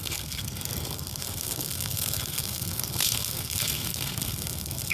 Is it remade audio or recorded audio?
remade